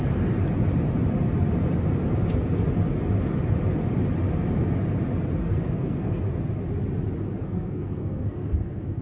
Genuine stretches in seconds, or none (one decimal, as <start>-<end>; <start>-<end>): 0.0-5.4; 6.3-7.4